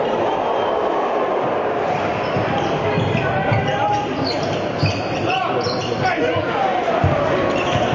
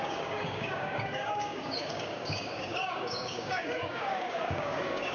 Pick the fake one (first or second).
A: second